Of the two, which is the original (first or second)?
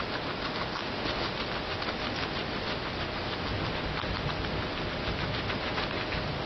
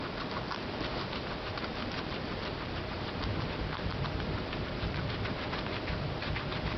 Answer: first